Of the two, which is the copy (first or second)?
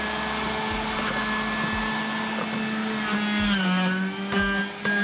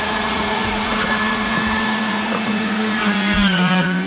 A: second